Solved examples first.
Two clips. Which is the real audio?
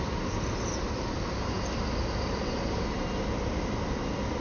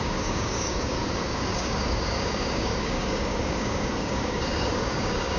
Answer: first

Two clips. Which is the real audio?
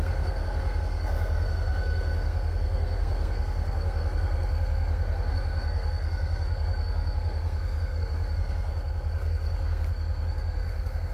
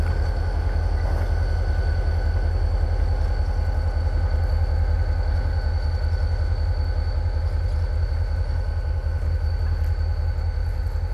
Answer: second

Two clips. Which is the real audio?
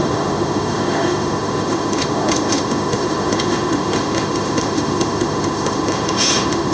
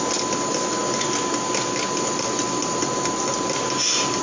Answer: second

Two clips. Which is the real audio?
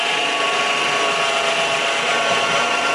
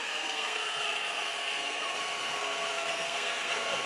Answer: first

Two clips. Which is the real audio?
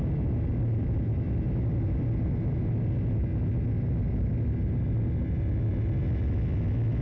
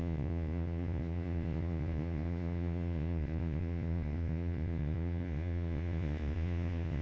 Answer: first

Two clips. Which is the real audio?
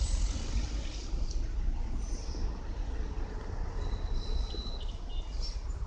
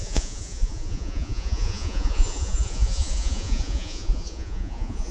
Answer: first